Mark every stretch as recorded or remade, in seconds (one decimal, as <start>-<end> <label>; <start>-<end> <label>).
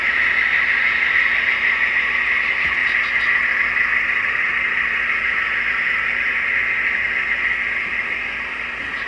0.0-9.1 recorded